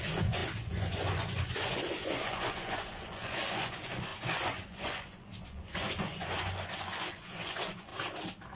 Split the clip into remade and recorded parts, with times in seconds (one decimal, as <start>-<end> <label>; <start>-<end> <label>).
0.0-7.9 remade; 7.9-8.6 recorded